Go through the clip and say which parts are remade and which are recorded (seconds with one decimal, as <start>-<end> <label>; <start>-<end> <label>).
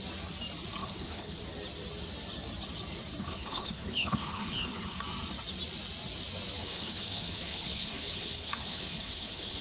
0.0-0.8 recorded; 0.8-1.4 remade; 1.4-3.2 recorded; 3.2-5.0 remade; 5.0-6.6 recorded; 6.6-9.6 remade